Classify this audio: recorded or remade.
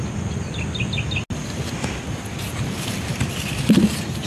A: recorded